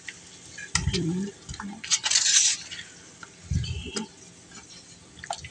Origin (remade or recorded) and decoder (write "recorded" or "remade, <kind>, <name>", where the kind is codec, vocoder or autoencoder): recorded